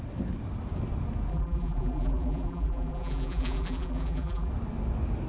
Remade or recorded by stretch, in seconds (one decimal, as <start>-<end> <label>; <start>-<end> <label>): 0.0-1.3 recorded; 1.3-4.5 remade; 4.5-5.3 recorded